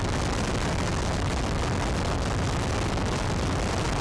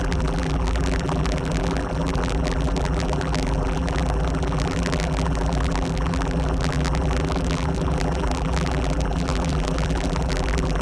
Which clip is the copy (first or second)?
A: second